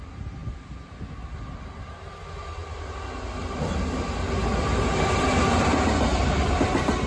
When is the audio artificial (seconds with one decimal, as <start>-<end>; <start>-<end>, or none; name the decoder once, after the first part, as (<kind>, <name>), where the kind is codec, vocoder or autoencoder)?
none